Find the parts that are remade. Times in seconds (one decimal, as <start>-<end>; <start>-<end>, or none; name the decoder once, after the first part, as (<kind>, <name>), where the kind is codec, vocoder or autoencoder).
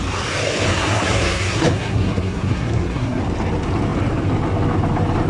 0.7-3.2 (codec, SNAC)